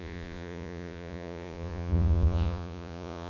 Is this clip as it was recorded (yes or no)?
no